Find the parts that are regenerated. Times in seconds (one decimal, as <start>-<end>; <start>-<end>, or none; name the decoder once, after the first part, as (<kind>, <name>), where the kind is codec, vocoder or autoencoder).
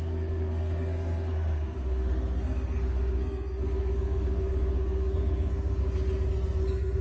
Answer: 0.0-5.8 (codec, SNAC); 6.3-7.0